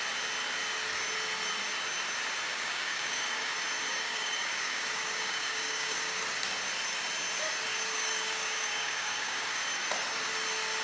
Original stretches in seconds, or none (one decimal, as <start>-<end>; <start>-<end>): 0.0-2.5; 3.5-3.9; 6.2-7.7; 9.6-10.8